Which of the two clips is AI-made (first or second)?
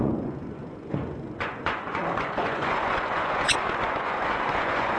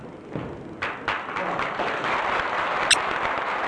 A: first